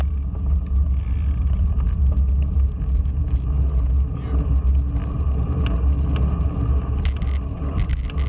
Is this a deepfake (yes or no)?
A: no